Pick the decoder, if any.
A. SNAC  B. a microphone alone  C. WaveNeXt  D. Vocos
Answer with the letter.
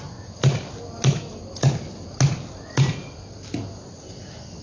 B